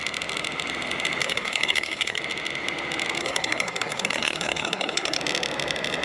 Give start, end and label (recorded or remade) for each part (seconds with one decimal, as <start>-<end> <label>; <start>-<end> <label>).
0.0-1.2 recorded; 1.2-2.2 remade; 2.2-3.2 recorded; 3.2-5.2 remade; 5.2-6.0 recorded